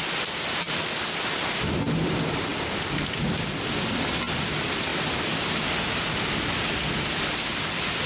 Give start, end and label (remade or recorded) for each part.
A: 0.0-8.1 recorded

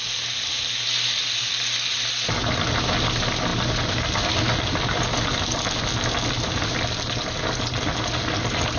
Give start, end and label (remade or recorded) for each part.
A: 0.0-8.8 recorded

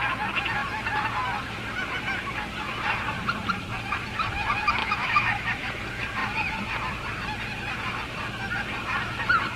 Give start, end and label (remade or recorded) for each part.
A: 0.0-4.8 recorded; 4.8-5.7 remade; 5.7-9.6 recorded